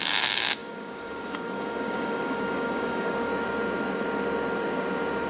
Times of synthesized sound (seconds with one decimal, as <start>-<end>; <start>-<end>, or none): 0.0-3.3